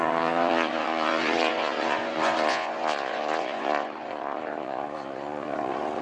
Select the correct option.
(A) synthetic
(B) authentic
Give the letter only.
A